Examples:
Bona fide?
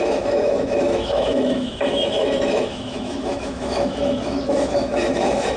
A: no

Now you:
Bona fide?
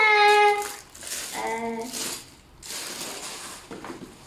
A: yes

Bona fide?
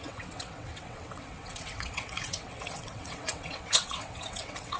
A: no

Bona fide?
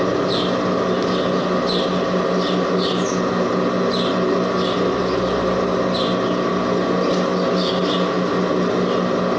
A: yes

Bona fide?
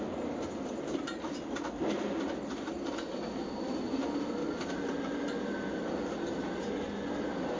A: yes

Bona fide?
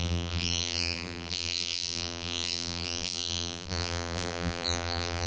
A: no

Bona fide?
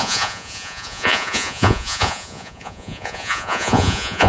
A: no